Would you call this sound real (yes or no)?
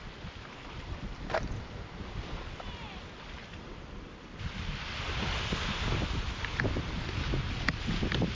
yes